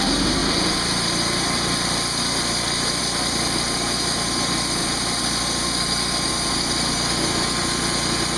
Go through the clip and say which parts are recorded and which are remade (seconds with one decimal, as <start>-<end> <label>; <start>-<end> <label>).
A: 0.0-8.4 recorded